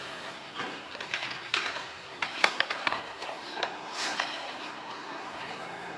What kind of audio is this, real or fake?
fake